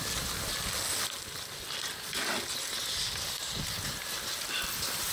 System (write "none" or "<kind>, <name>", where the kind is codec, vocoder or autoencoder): none